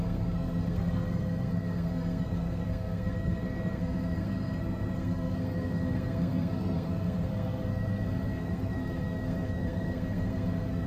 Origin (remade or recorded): remade